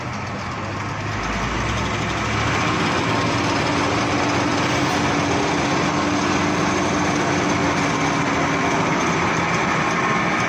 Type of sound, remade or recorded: recorded